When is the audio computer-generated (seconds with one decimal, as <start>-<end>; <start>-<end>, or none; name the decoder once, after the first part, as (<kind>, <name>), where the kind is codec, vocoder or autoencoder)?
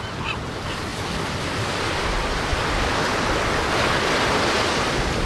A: none